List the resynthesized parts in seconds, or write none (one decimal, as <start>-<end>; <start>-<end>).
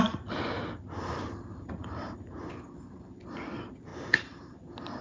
1.5-2.4; 3.9-4.6